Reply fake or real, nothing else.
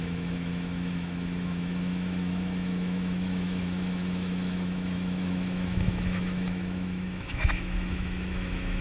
fake